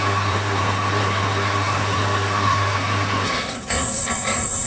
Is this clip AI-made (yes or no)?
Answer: yes